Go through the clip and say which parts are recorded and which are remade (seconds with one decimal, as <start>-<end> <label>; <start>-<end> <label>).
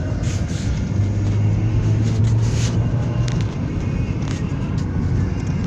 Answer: 0.0-1.7 recorded; 1.7-2.2 remade; 2.2-5.7 recorded